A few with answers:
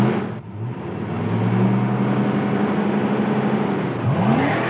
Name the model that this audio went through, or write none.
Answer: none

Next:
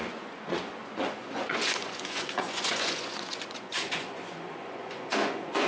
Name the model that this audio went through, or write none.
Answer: vocoder, Vocos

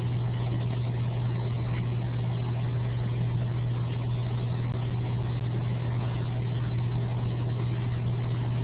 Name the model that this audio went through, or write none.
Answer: none